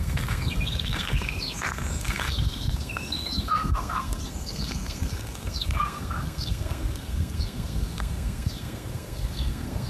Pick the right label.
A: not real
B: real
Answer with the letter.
A